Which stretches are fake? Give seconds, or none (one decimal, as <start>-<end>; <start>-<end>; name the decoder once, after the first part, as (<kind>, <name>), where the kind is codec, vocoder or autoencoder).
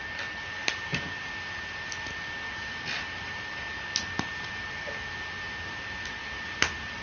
none